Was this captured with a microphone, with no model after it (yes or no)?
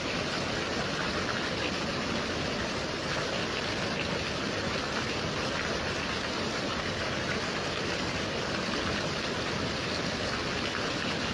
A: yes